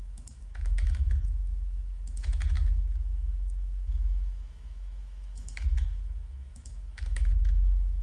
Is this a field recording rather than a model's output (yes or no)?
no